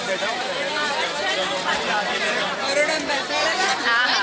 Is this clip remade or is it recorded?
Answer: remade